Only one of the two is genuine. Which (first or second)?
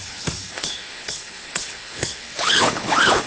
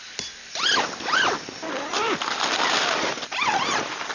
second